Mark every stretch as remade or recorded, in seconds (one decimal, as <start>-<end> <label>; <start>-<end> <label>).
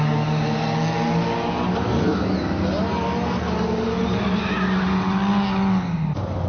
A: 0.0-6.5 recorded